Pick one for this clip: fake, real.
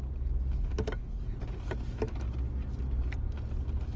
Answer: real